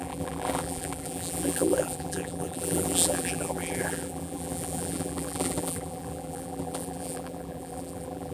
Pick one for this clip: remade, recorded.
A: remade